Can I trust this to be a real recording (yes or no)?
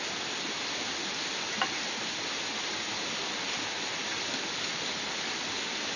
yes